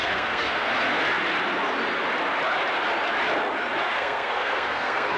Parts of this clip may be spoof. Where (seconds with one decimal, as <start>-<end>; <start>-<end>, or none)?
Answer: 0.0-0.7; 3.8-5.2